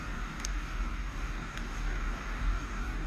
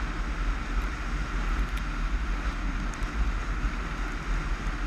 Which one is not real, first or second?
first